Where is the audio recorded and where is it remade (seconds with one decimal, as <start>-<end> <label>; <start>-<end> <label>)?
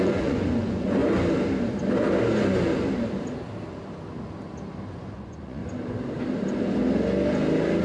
0.0-1.0 remade; 1.0-4.9 recorded; 4.9-5.6 remade; 5.6-7.8 recorded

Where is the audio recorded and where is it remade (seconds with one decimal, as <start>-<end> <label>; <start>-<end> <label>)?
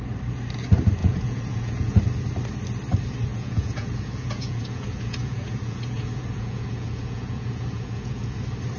0.0-1.0 recorded; 1.0-2.0 remade; 2.0-3.3 recorded; 3.3-8.4 remade; 8.4-8.8 recorded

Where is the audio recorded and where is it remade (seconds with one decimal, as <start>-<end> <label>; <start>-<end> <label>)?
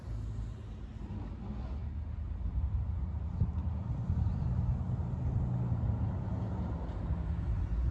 0.0-7.9 recorded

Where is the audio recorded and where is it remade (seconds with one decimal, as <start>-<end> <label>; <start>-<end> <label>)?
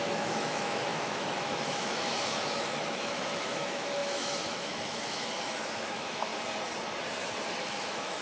0.0-6.3 remade; 6.3-7.6 recorded; 7.6-8.2 remade